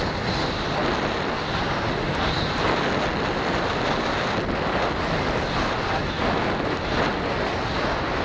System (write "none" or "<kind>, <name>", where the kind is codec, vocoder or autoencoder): none